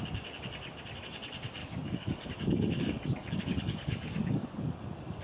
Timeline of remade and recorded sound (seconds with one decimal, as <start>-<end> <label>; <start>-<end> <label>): 0.0-1.6 recorded; 1.6-4.7 remade; 4.7-5.2 recorded